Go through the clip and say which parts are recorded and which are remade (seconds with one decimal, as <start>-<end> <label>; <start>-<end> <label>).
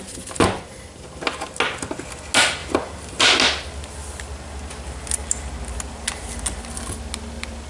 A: 0.0-7.7 recorded